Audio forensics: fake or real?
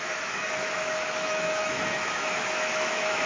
fake